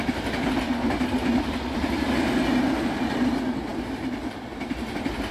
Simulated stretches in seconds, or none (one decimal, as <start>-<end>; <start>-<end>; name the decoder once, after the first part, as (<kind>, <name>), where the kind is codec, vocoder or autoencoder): none